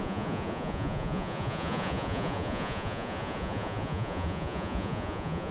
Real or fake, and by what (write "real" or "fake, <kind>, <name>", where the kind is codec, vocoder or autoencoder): fake, vocoder, Vocos